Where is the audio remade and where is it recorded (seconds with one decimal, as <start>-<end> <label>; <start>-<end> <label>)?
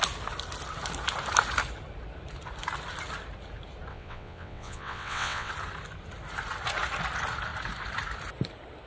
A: 0.0-3.9 recorded; 3.9-5.5 remade; 5.5-8.9 recorded